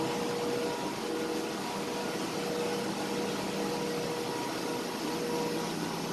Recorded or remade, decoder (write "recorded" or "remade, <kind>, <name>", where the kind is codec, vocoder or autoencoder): recorded